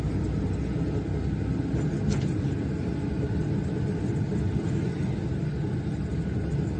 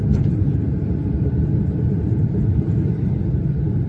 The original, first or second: first